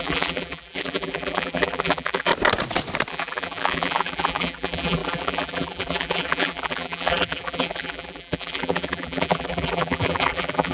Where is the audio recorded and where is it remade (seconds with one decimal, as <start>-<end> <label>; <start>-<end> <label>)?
0.0-2.3 remade; 2.3-3.1 recorded; 3.1-10.7 remade